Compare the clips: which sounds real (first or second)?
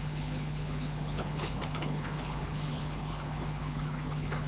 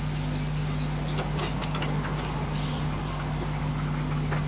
second